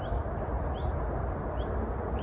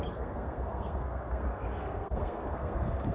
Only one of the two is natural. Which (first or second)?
first